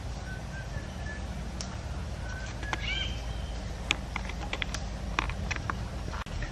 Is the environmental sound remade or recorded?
recorded